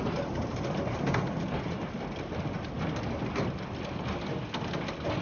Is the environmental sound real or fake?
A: real